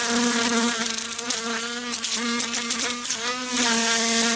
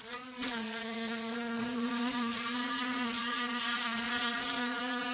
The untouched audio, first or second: first